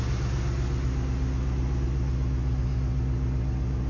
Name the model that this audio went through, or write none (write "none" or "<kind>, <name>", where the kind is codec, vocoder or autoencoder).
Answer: none